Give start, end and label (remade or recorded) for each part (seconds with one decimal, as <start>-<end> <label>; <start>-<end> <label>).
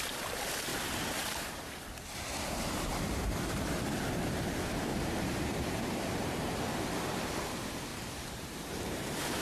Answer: 0.0-0.7 recorded; 0.7-4.1 remade; 4.1-4.9 recorded; 4.9-6.6 remade; 6.6-7.9 recorded; 7.9-9.4 remade